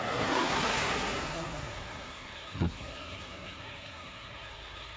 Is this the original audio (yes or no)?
no